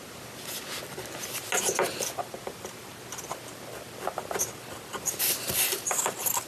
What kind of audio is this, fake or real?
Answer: real